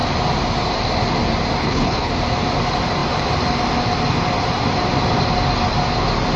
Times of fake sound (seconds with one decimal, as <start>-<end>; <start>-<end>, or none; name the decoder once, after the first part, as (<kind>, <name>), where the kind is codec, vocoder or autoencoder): 1.6-2.1 (codec, HILCodec)